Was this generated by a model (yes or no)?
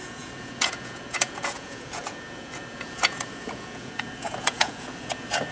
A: yes